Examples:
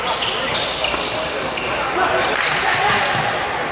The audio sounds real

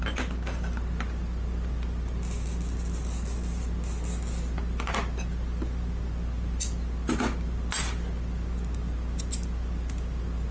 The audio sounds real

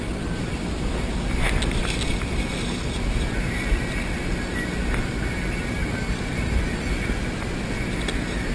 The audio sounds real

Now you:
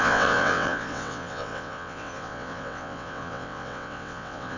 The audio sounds fake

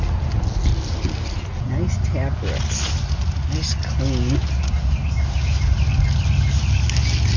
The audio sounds real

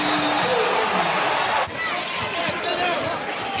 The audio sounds real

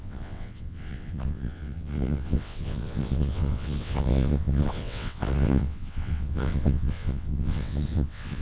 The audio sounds fake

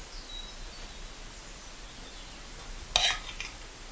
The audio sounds real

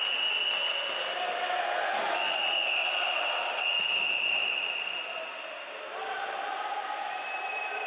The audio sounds real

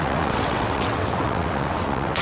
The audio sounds fake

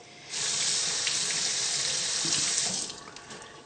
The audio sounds real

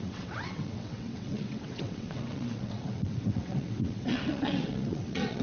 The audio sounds fake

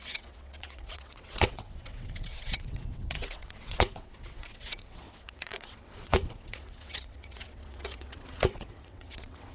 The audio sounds fake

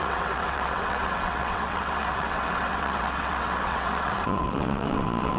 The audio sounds fake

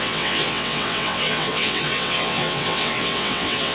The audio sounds fake